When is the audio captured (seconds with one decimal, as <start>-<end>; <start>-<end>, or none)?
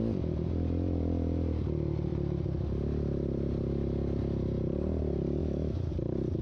0.0-5.4; 5.9-6.4